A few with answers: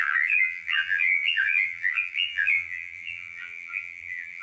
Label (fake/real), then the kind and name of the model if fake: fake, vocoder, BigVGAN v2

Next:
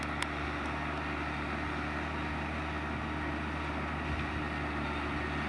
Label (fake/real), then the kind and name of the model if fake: real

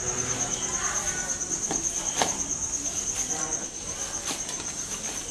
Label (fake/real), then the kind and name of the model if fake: real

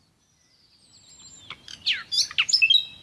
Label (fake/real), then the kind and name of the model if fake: real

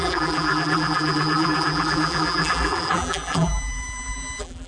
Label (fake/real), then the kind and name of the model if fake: fake, vocoder, BigVGAN v2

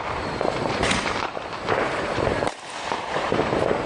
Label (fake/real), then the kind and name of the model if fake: fake, vocoder, BigVGAN v2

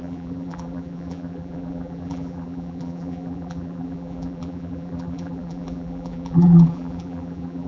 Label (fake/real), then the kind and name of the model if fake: fake, vocoder, BigVGAN v2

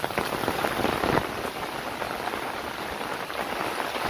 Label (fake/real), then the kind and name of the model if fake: fake, vocoder, BigVGAN v2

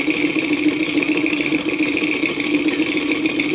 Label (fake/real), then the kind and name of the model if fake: real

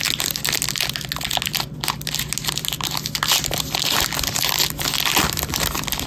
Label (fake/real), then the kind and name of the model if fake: real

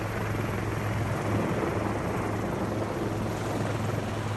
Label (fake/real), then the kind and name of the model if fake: real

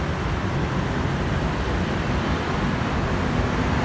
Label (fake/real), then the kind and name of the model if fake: fake, vocoder, BigVGAN v2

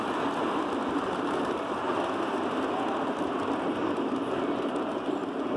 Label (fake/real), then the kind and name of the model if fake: real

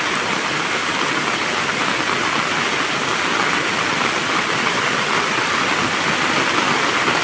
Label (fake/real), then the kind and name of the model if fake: real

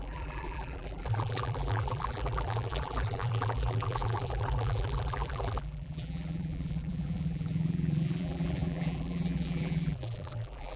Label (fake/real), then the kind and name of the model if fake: fake, vocoder, BigVGAN v2